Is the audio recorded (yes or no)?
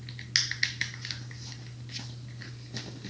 yes